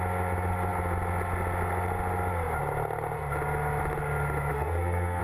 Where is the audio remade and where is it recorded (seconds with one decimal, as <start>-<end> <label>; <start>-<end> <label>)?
0.0-4.5 recorded; 4.5-5.2 remade